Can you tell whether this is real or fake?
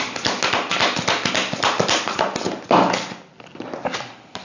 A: real